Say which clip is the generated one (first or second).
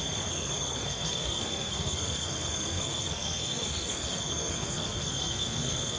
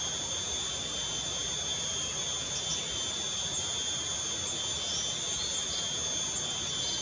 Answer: first